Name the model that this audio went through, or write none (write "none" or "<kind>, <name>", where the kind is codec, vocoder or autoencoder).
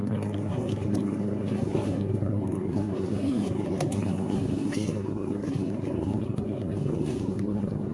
codec, SNAC